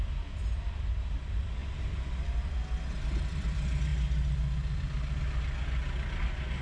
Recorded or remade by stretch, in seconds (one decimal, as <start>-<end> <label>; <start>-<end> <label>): 0.0-6.6 recorded